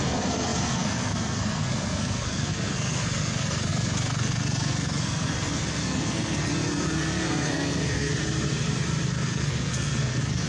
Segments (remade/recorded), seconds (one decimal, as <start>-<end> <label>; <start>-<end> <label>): 0.0-8.1 remade; 8.1-9.1 recorded; 9.1-10.5 remade